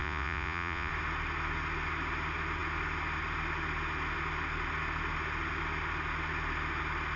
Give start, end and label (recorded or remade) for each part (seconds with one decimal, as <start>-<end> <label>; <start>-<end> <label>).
0.0-0.9 remade; 0.9-7.2 recorded